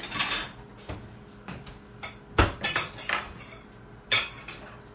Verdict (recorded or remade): recorded